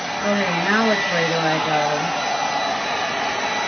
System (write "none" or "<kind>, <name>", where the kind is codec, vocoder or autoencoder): none